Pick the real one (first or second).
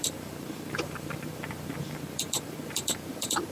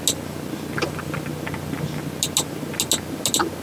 second